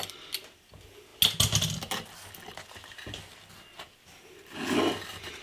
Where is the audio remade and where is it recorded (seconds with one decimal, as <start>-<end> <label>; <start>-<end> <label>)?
0.0-5.4 recorded